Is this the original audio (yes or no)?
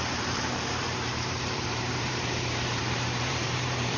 no